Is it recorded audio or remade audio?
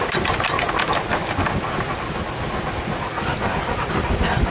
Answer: recorded